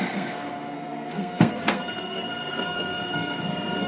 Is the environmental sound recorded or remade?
remade